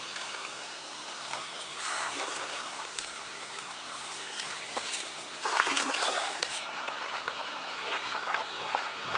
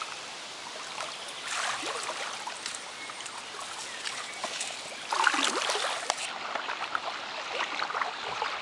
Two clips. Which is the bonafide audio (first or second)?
second